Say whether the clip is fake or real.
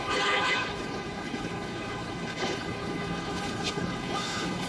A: fake